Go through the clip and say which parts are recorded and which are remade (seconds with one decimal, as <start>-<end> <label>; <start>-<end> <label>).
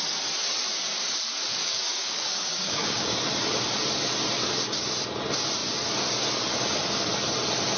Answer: 0.0-1.6 recorded; 1.6-3.1 remade; 3.1-7.8 recorded